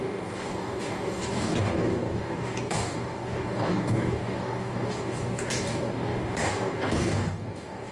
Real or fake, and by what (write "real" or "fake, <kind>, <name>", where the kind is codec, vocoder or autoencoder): fake, codec, DAC